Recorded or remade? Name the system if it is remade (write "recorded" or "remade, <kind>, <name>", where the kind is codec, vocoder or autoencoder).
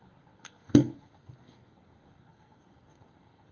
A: remade, codec, SNAC